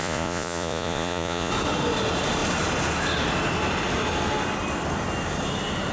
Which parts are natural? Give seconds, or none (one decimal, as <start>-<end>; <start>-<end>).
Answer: 1.5-5.9